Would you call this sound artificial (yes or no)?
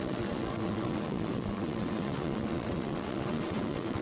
yes